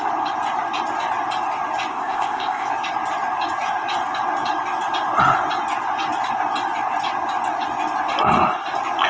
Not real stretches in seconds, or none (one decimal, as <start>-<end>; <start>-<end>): 1.9-2.7